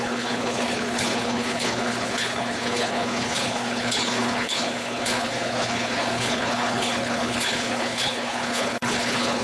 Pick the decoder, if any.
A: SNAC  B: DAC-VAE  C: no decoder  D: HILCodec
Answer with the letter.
D